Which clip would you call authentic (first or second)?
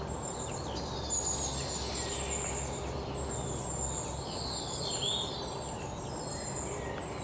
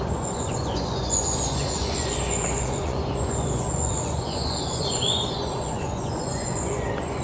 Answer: first